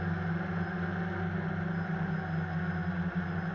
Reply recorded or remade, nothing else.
recorded